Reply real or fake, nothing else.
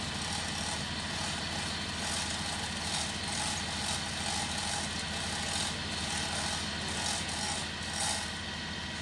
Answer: real